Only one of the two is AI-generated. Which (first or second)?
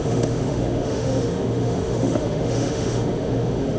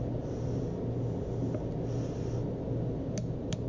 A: first